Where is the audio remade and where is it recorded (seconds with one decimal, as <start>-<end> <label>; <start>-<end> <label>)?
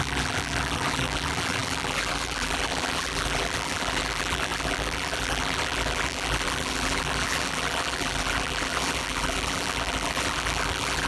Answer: 0.0-11.1 remade